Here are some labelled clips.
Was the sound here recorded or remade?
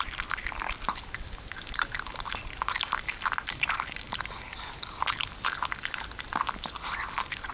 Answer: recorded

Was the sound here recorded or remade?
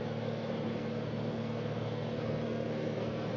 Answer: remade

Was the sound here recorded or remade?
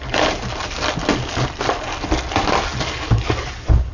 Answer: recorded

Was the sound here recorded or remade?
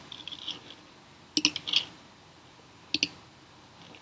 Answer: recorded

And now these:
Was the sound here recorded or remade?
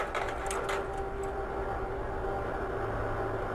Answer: recorded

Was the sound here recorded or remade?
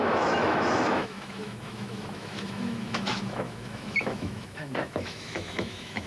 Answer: remade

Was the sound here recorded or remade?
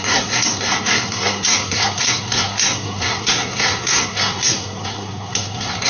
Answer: remade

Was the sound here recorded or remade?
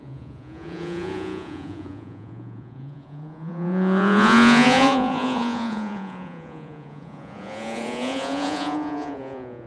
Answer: remade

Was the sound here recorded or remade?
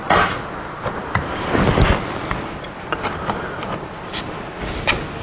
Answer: recorded